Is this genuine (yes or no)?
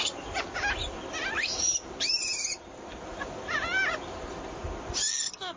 yes